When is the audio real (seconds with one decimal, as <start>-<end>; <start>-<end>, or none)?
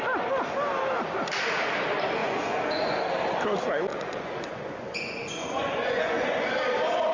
0.0-2.2; 3.0-3.9; 6.4-7.1